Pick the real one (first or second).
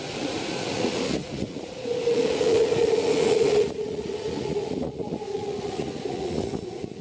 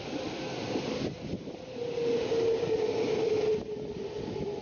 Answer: second